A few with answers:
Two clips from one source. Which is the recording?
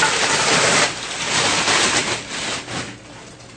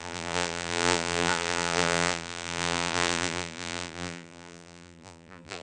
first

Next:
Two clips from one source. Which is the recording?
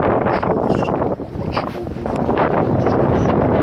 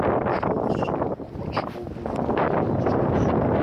second